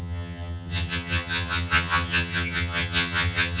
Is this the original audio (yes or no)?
no